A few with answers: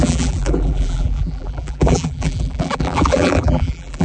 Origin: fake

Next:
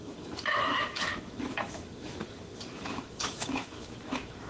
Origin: fake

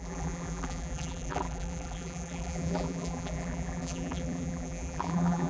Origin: fake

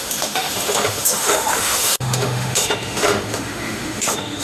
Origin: fake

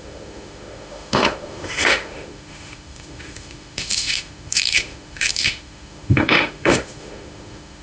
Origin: fake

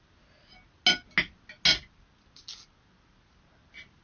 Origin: real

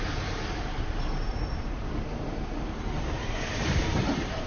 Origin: fake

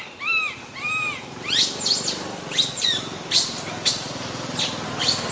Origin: real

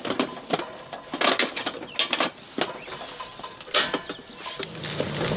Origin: real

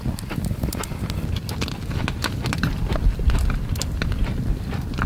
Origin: real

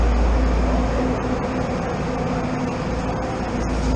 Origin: real